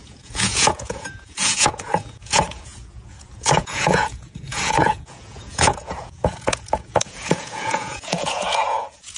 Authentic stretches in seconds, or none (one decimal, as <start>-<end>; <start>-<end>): none